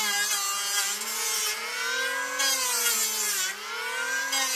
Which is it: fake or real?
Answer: real